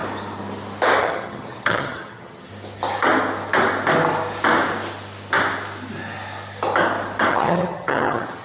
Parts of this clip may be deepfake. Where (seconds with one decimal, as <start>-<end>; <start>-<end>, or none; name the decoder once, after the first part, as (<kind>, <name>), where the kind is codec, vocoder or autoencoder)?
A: 1.0-2.5 (vocoder, HiFi-GAN); 7.3-8.4